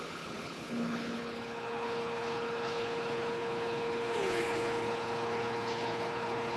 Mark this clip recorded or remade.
remade